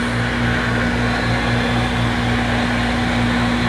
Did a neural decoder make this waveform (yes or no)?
no